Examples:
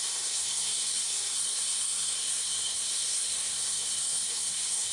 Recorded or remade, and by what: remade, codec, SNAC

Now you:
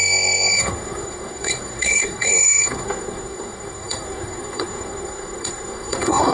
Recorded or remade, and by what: remade, codec, SNAC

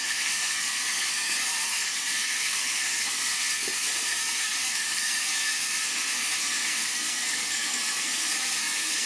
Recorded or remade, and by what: remade, codec, SNAC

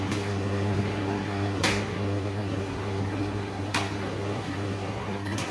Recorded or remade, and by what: remade, codec, SNAC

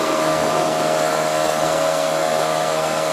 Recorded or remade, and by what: remade, codec, SNAC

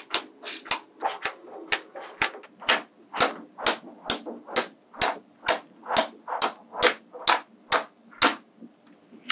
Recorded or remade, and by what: recorded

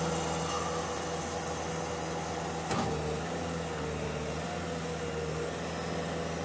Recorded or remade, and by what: recorded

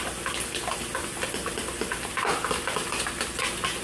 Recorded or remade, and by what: recorded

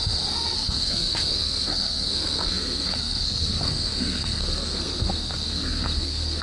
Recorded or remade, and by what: remade, codec, SNAC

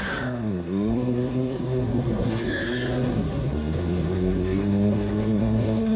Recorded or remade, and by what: remade, codec, SNAC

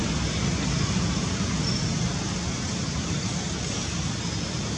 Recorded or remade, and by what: recorded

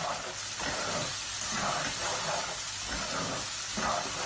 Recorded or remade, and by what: recorded